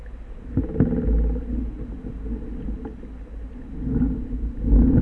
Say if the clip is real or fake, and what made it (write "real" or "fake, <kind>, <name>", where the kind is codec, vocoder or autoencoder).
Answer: real